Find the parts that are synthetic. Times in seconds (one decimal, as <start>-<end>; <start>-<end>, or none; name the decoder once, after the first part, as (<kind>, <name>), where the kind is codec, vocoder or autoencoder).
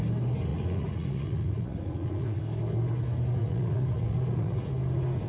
0.5-2.4 (vocoder, Vocos); 3.4-4.7